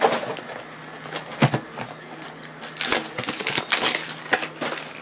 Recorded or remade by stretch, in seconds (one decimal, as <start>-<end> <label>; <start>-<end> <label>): 0.0-5.0 recorded